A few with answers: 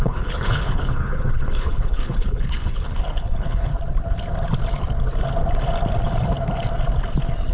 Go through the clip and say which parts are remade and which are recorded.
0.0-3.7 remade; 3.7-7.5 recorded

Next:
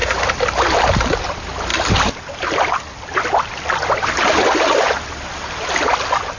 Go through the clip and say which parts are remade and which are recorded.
0.0-6.4 recorded